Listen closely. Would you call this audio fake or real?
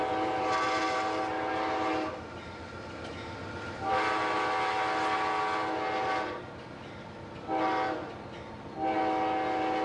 real